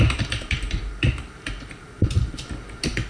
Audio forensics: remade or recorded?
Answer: remade